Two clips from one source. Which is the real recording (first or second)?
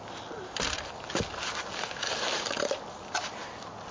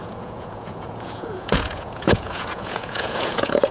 first